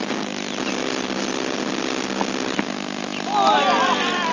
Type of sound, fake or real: real